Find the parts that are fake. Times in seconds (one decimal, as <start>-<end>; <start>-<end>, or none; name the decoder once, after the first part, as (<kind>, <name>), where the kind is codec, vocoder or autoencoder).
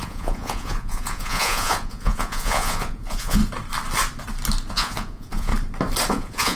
0.0-3.4 (vocoder, Vocos); 4.7-5.5; 6.1-6.6